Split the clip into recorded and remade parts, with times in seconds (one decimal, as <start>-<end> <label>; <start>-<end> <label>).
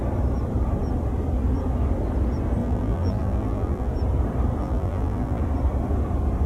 0.0-2.6 recorded; 2.6-3.9 remade; 3.9-4.6 recorded; 4.6-5.4 remade; 5.4-6.5 recorded